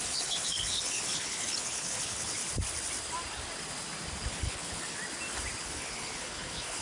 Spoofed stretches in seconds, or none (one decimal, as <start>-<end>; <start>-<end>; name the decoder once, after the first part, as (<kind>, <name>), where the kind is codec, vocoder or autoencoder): 0.0-2.4 (codec, HILCodec); 4.3-5.0; 5.6-6.8